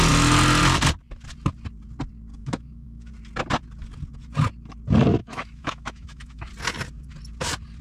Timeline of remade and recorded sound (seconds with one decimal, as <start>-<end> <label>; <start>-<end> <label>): 0.0-2.3 recorded; 2.3-3.1 remade; 3.1-5.2 recorded; 5.2-6.5 remade; 6.5-7.8 recorded

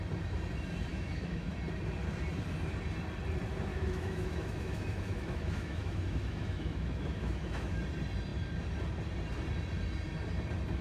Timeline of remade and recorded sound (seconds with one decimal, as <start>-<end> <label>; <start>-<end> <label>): 0.0-0.9 recorded; 0.9-1.5 remade; 1.5-3.7 recorded; 3.7-7.8 remade; 7.8-10.8 recorded

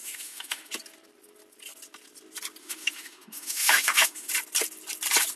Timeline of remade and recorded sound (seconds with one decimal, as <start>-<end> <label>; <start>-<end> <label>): 0.0-0.7 remade; 0.7-2.6 recorded; 2.6-4.3 remade; 4.3-5.4 recorded